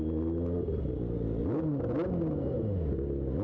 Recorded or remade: recorded